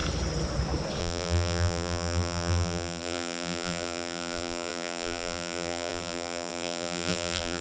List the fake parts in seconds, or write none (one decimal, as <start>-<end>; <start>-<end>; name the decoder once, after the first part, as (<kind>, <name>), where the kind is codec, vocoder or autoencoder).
1.0-7.6 (vocoder, BigVGAN v2)